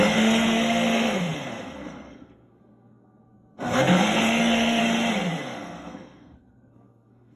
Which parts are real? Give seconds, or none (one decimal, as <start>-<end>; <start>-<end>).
4.8-5.4